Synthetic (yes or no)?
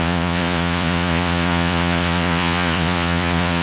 yes